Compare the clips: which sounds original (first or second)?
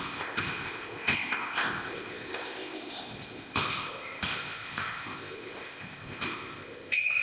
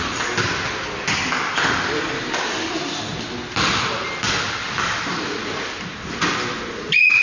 second